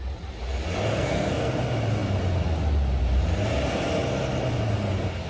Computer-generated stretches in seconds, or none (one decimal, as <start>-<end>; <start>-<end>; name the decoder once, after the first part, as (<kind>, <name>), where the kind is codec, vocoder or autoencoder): 0.9-1.5 (codec, SNAC)